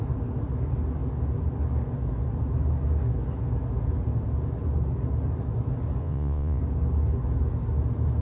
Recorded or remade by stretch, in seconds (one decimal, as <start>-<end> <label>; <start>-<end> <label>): 0.0-6.0 recorded; 6.0-6.6 remade; 6.6-8.2 recorded